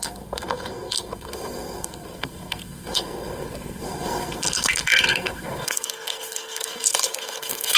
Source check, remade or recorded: remade